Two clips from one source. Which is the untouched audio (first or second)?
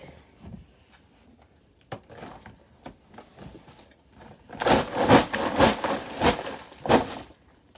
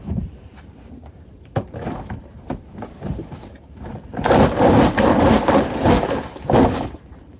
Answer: first